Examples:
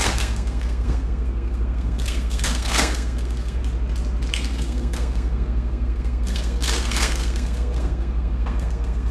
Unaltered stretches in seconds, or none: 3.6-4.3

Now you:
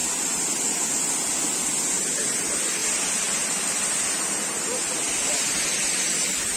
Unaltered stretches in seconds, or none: 0.0-6.6

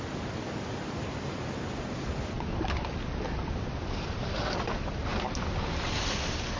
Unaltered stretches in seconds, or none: 0.0-6.6